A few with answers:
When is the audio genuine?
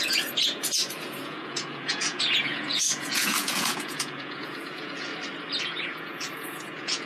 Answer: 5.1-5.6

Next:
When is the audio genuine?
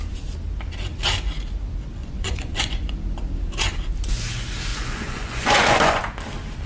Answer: 0.0-2.0; 2.9-4.7; 6.0-6.7